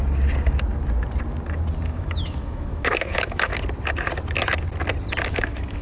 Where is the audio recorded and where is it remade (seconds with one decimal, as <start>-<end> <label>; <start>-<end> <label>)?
0.0-1.9 recorded; 1.9-3.5 remade; 3.5-5.3 recorded; 5.3-5.8 remade